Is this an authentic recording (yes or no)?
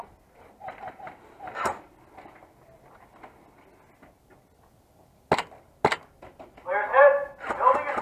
yes